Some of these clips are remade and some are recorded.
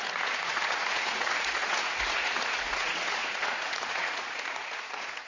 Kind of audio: remade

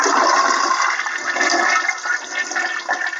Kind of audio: recorded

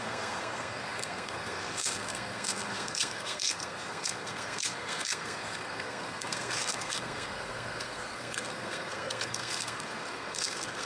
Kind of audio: remade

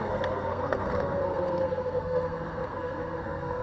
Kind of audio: remade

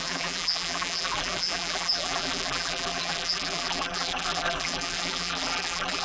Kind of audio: remade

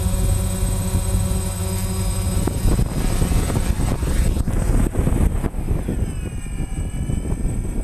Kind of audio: recorded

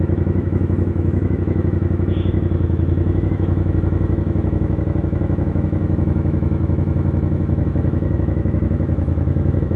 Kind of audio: remade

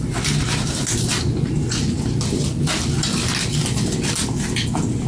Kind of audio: recorded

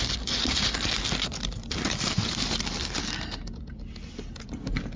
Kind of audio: recorded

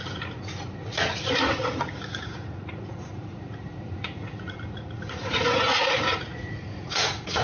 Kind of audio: remade